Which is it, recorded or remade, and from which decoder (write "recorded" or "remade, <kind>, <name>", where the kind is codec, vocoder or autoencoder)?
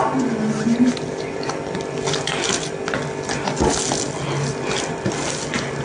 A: recorded